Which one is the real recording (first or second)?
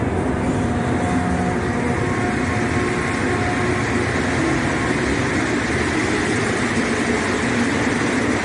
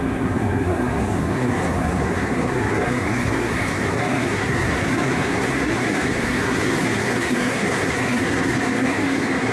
first